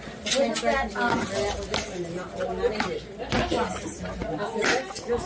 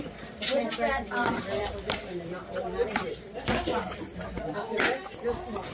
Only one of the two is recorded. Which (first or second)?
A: first